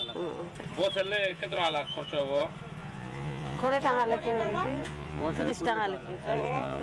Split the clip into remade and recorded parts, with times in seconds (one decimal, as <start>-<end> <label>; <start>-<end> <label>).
0.0-1.3 recorded; 1.3-2.4 remade; 2.4-2.8 recorded; 2.8-5.5 remade; 5.5-6.0 recorded; 6.0-6.8 remade